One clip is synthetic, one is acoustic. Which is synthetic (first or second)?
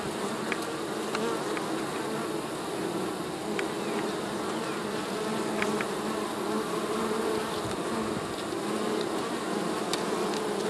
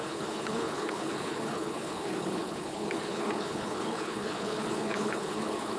second